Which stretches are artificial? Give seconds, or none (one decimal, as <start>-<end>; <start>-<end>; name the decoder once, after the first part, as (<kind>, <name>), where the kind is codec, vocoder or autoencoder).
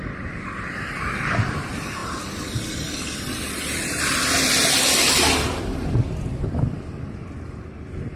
none